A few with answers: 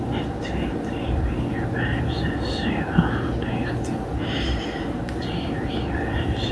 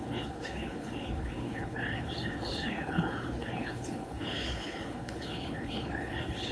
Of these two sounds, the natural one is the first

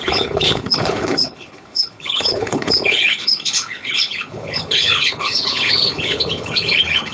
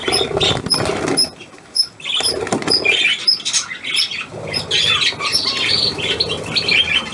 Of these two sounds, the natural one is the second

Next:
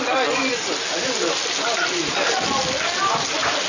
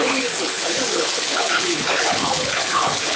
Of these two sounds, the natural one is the first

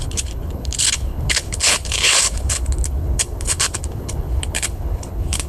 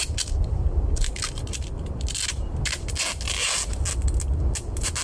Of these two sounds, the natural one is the second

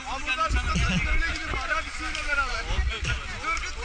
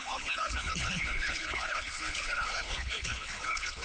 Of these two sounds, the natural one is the first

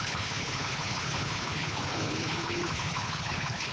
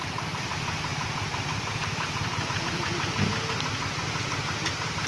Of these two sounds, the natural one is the second